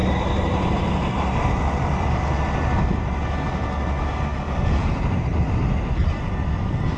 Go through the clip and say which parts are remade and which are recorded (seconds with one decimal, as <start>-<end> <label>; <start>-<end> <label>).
0.0-1.0 remade; 1.0-4.8 recorded; 4.8-5.6 remade; 5.6-7.0 recorded